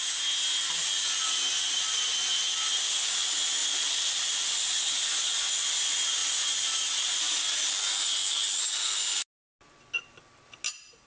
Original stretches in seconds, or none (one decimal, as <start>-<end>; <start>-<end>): 0.0-3.6; 5.7-11.1